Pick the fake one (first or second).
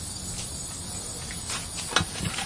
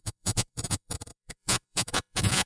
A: second